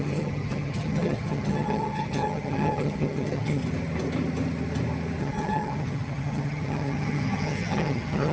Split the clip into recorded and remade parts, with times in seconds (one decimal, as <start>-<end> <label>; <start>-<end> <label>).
0.0-3.6 remade; 3.6-5.2 recorded; 5.2-8.3 remade